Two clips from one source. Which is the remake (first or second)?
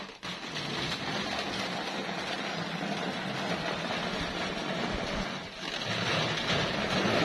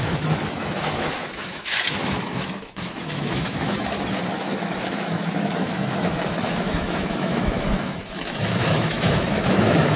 second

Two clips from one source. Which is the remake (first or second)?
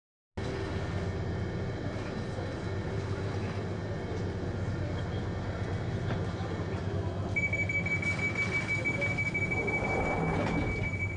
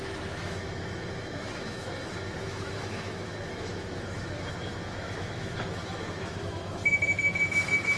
second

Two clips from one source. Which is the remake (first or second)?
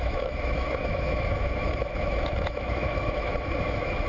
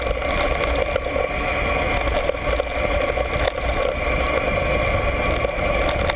first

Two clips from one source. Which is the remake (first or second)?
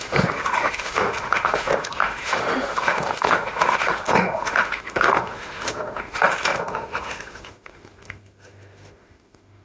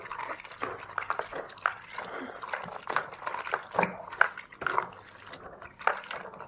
first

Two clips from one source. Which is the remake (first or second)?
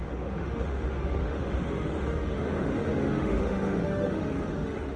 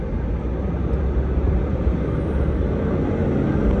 first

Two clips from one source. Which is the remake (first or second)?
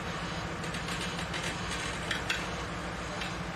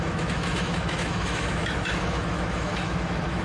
second